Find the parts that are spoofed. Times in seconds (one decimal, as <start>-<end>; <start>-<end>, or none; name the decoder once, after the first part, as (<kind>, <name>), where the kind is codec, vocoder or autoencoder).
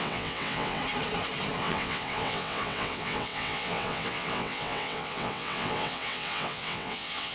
0.0-0.8 (vocoder, WaveNeXt); 1.6-7.3